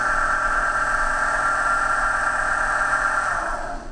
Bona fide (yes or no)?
yes